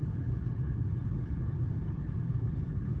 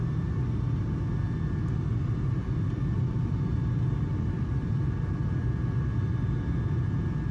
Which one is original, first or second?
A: second